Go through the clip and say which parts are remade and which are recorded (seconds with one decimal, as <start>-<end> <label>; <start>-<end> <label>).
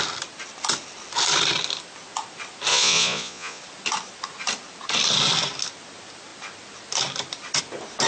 0.0-2.7 recorded; 2.7-3.6 remade; 3.6-8.1 recorded